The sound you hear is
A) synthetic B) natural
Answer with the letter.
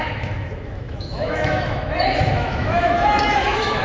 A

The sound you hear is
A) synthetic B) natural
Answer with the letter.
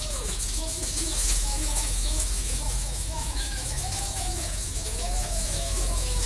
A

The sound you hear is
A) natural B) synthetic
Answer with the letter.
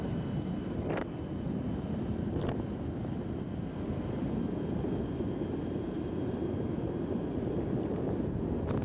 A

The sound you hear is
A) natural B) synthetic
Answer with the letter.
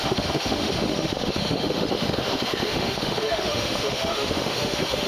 B